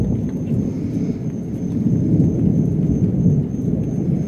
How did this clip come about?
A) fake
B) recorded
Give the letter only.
B